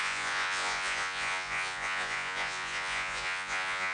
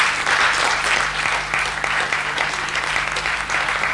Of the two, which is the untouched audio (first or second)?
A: second